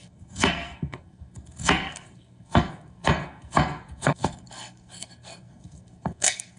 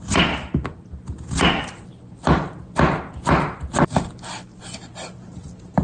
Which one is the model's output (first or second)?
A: first